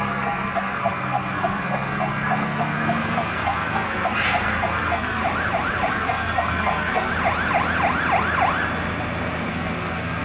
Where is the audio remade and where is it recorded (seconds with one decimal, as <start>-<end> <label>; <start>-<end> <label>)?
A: 0.0-5.2 remade; 5.2-5.9 recorded; 5.9-7.1 remade; 7.1-9.5 recorded; 9.5-10.2 remade